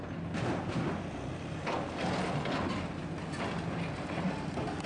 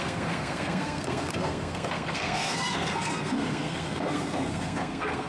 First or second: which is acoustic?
first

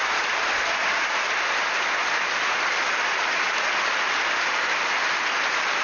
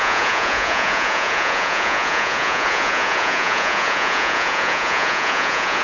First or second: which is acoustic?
first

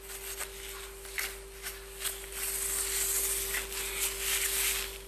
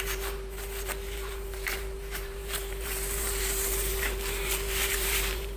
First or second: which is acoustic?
first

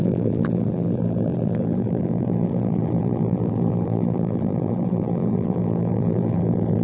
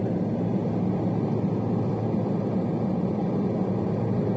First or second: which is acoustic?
second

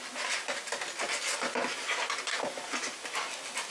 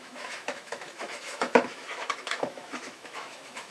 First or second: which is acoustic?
first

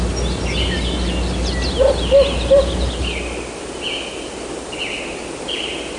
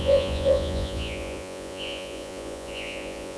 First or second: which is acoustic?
first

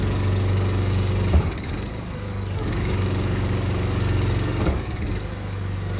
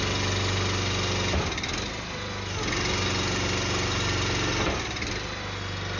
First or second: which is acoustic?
second